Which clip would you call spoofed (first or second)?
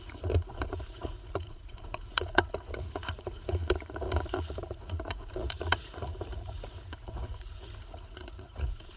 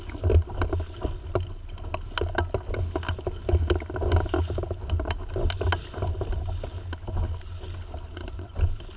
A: first